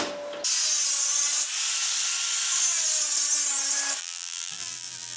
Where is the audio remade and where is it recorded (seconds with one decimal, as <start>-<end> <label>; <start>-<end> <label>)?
0.0-4.0 recorded; 4.0-5.2 remade